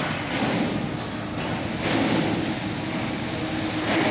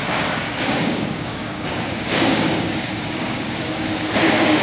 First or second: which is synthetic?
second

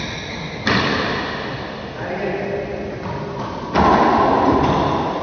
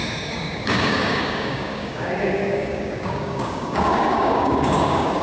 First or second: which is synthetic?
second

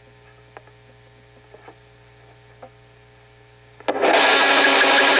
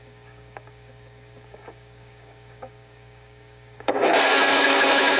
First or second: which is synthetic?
second